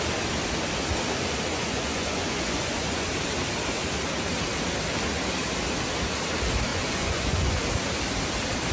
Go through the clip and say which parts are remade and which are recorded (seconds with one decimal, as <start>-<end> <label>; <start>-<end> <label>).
0.0-1.5 recorded; 1.5-3.1 remade; 3.1-6.7 recorded; 6.7-7.6 remade; 7.6-8.7 recorded